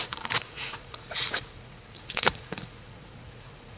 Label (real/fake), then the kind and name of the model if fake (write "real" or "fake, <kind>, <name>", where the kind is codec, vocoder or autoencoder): fake, vocoder, Vocos